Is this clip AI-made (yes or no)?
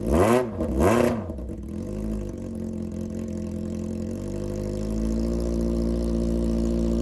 no